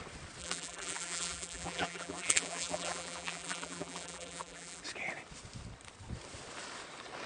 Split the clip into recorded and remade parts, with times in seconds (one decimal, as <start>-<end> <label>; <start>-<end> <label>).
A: 0.0-0.4 recorded; 0.4-4.8 remade; 4.8-7.3 recorded